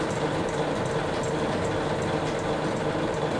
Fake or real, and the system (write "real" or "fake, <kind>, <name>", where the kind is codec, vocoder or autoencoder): real